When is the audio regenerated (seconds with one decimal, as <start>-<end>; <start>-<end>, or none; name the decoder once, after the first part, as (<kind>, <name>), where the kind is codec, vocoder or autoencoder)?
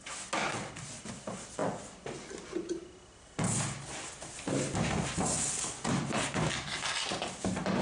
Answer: none